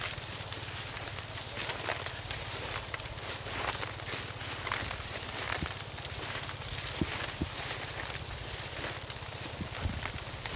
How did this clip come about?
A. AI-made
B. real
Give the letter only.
B